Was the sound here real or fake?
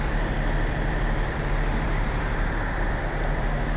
fake